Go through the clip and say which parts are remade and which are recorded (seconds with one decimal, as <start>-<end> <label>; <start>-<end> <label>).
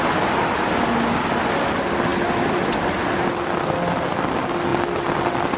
0.0-5.6 recorded